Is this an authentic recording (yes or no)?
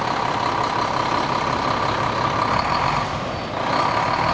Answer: yes